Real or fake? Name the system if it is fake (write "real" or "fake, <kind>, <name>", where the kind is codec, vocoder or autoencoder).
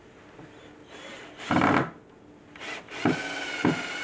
real